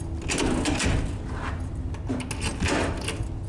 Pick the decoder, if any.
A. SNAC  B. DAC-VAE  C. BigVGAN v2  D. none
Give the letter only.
D